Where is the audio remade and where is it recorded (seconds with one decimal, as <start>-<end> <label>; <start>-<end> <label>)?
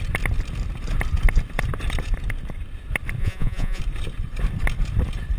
0.0-3.2 recorded; 3.2-3.8 remade; 3.8-5.4 recorded